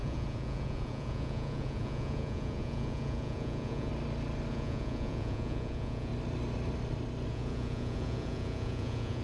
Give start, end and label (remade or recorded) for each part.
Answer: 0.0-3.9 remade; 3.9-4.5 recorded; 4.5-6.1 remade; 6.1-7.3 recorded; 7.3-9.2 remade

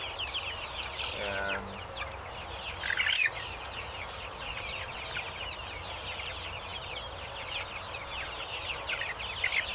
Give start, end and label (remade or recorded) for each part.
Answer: 0.0-3.2 recorded; 3.2-4.6 remade; 4.6-9.7 recorded

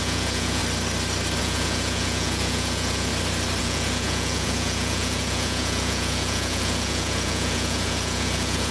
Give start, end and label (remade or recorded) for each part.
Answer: 0.0-0.6 remade; 0.6-1.4 recorded; 1.4-3.1 remade; 3.1-3.6 recorded; 3.6-8.7 remade